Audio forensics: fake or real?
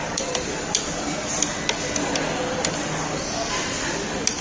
real